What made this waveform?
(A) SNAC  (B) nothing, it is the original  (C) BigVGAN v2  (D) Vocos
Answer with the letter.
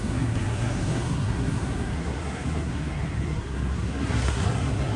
A